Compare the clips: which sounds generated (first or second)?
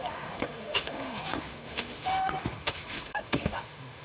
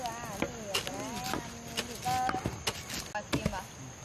first